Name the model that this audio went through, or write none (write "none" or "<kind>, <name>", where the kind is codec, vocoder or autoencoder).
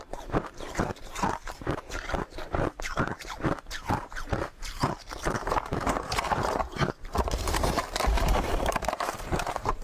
vocoder, BigVGAN v2